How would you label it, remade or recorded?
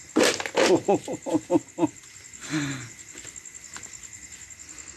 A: recorded